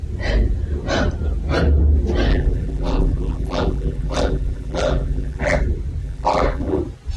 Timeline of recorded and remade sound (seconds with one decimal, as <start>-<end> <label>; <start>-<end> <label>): 0.0-2.3 recorded; 2.3-5.6 remade; 5.6-6.0 recorded; 6.0-6.8 remade; 6.8-7.2 recorded